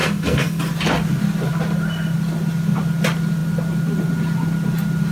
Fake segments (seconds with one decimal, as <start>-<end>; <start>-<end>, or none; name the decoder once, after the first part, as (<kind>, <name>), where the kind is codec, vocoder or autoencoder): 0.0-0.6 (codec, SNAC)